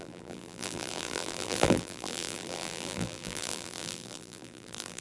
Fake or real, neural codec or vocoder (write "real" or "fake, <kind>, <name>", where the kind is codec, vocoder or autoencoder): fake, vocoder, BigVGAN v2